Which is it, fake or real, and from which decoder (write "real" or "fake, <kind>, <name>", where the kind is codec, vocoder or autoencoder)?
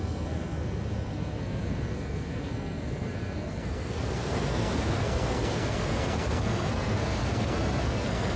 fake, codec, SNAC